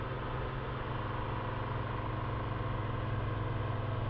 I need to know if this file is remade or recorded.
recorded